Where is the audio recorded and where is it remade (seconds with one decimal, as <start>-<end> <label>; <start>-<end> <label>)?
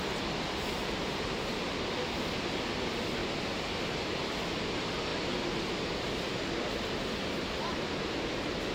0.0-8.7 recorded